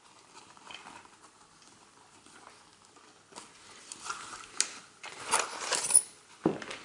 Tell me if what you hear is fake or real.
real